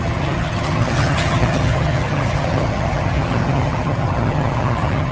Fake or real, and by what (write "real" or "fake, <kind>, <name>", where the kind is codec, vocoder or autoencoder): fake, vocoder, HiFi-GAN